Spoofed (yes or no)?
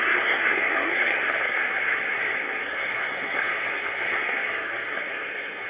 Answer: yes